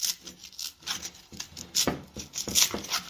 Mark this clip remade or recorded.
recorded